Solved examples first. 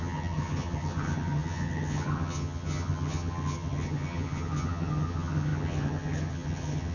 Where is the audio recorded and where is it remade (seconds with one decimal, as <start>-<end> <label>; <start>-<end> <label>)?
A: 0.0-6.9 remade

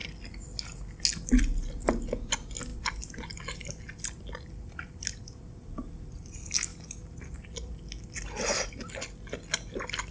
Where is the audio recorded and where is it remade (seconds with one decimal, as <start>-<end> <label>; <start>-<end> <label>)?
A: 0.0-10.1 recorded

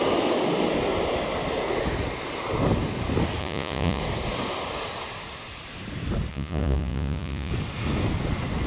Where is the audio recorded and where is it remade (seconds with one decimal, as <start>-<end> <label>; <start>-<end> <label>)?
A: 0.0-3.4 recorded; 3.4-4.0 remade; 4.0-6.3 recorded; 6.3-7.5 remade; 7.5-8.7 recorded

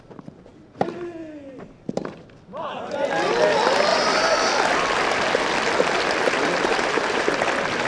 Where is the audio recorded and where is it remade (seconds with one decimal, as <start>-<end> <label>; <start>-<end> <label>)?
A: 0.0-3.9 recorded; 3.9-4.5 remade; 4.5-6.7 recorded; 6.7-7.3 remade; 7.3-7.9 recorded

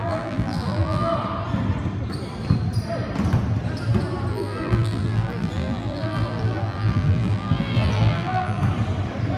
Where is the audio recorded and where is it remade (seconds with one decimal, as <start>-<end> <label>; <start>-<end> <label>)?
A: 0.0-1.1 remade; 1.1-4.3 recorded; 4.3-8.6 remade; 8.6-9.4 recorded